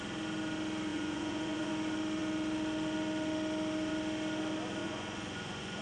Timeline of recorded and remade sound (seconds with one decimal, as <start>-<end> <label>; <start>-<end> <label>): 0.0-0.9 recorded; 0.9-1.7 remade; 1.7-4.8 recorded; 4.8-5.8 remade